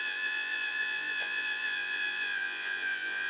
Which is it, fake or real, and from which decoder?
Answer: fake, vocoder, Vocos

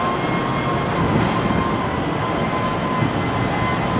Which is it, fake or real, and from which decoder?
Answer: real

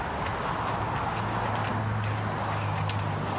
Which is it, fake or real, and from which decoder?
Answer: real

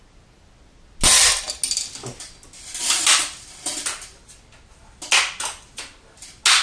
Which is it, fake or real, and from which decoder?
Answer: real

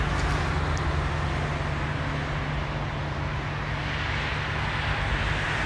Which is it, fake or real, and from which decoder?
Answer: real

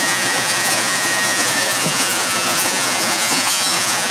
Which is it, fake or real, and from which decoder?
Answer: fake, vocoder, Vocos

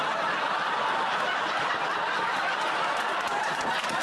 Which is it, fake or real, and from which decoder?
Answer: real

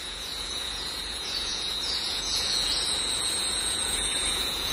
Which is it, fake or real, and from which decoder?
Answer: fake, vocoder, Vocos